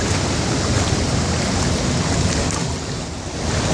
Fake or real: real